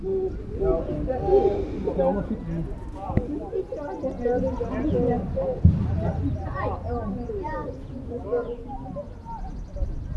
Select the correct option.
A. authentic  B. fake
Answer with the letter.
A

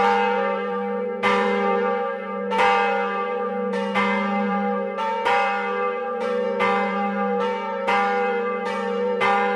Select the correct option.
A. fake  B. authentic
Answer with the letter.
A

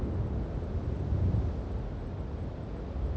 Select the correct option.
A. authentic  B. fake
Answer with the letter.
A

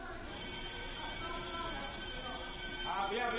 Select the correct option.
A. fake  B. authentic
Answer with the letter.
B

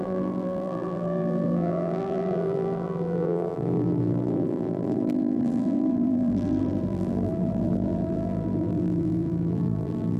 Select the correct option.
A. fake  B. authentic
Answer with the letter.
A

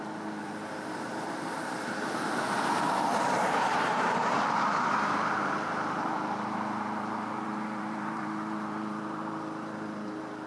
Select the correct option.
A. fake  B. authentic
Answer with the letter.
A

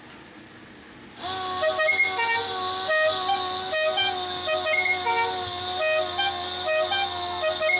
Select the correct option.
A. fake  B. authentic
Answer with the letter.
B